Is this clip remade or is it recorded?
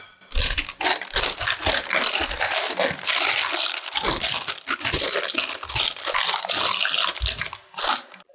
remade